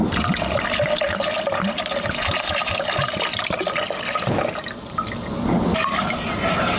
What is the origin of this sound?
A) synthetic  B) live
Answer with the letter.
B